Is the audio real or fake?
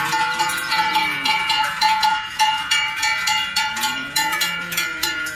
fake